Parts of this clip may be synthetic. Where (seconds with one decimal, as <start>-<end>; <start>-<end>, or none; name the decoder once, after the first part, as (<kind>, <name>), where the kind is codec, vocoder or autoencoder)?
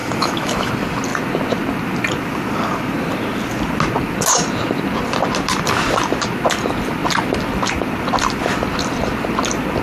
0.0-0.7 (autoencoder, DAC-VAE)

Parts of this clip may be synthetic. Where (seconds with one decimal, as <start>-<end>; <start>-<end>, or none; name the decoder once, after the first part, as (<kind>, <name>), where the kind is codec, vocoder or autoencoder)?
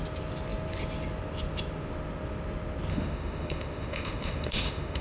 2.9-5.0 (autoencoder, DAC-VAE)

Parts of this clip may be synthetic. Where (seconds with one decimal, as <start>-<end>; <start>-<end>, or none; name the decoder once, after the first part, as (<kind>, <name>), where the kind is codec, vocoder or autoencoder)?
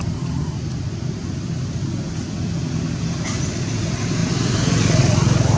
none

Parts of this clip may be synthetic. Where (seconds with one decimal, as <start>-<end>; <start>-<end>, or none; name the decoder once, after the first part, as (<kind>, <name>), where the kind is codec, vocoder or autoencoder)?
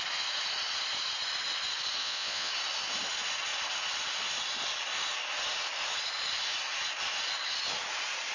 2.0-2.5 (vocoder, Vocos)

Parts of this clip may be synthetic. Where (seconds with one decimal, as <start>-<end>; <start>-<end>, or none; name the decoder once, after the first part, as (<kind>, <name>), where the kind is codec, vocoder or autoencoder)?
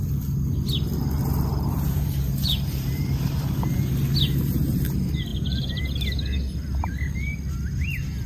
1.5-3.9 (vocoder, BigVGAN v2); 5.3-5.8